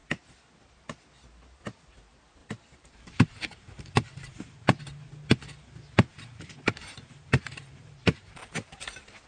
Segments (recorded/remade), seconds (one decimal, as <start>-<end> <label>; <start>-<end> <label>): 0.0-2.4 recorded; 2.4-4.8 remade; 4.8-6.1 recorded; 6.1-8.9 remade; 8.9-9.3 recorded